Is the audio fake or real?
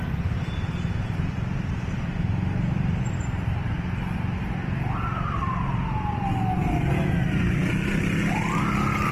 real